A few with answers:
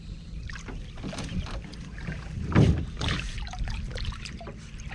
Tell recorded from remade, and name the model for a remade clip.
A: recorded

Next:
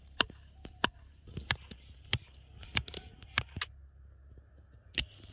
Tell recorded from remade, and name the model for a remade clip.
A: recorded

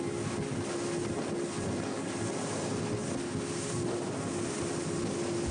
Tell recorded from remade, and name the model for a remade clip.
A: recorded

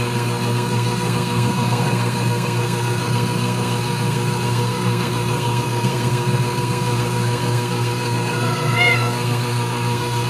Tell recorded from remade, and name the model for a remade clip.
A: remade, codec, SNAC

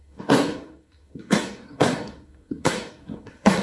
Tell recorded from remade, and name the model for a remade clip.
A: remade, codec, SNAC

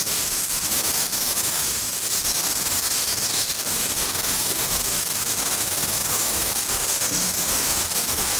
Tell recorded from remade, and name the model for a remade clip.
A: remade, codec, DAC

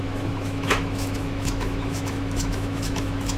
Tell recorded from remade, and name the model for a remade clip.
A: remade, autoencoder, DAC-VAE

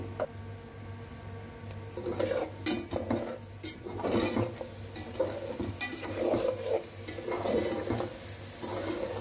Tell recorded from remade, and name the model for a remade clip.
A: recorded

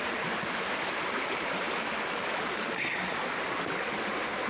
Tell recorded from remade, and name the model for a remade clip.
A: remade, vocoder, BigVGAN v2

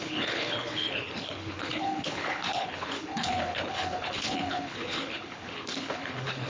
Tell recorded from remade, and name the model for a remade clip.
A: remade, codec, HILCodec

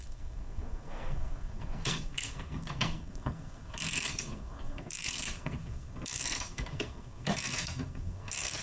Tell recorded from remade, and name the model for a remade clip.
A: remade, codec, SNAC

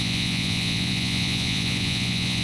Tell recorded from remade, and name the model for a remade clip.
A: remade, vocoder, Vocos